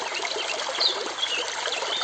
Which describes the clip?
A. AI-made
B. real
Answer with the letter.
B